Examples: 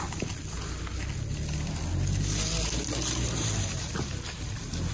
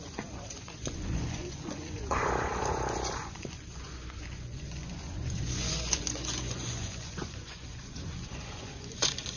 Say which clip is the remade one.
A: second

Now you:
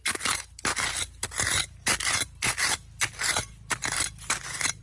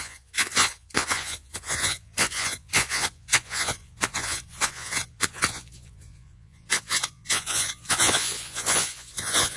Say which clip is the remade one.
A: second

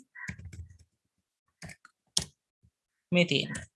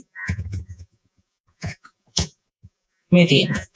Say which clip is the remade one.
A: second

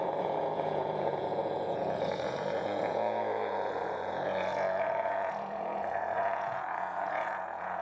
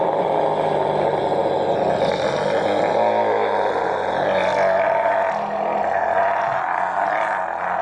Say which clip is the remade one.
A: first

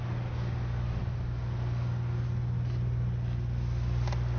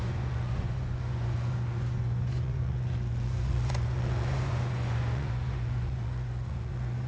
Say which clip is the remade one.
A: second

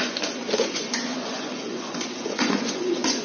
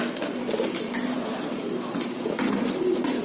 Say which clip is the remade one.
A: first